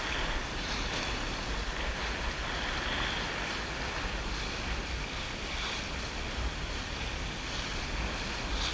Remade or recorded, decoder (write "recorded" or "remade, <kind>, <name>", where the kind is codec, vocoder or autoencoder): recorded